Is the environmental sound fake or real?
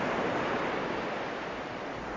real